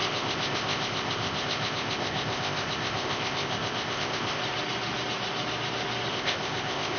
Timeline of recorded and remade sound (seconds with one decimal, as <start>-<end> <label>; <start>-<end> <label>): 0.0-4.4 remade; 4.4-6.1 recorded; 6.1-7.0 remade